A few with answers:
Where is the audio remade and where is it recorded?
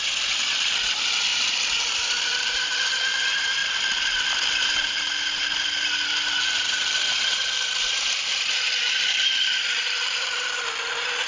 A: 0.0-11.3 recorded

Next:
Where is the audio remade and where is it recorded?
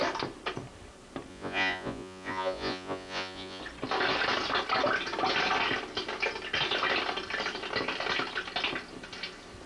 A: 0.0-1.3 recorded; 1.3-3.6 remade; 3.6-9.7 recorded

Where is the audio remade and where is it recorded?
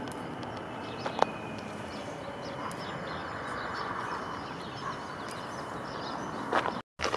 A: 0.0-3.2 recorded; 3.2-4.2 remade; 4.2-7.2 recorded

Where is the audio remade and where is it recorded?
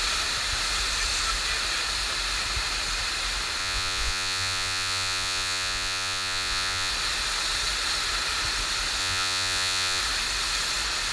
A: 0.0-3.6 recorded; 3.6-6.9 remade; 6.9-9.0 recorded; 9.0-10.0 remade; 10.0-11.1 recorded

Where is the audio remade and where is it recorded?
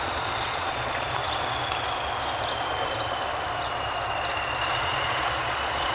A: 0.0-1.2 remade; 1.2-4.7 recorded; 4.7-5.9 remade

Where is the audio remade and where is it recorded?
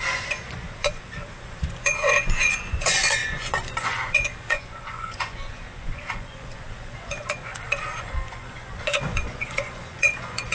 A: 0.0-10.5 remade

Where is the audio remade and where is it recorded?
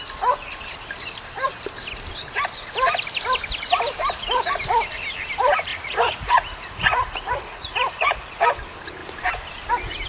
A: 0.0-5.7 recorded; 5.7-8.4 remade; 8.4-10.1 recorded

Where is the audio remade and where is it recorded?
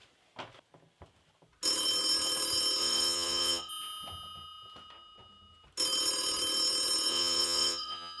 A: 0.0-2.8 recorded; 2.8-3.7 remade; 3.7-7.1 recorded; 7.1-8.2 remade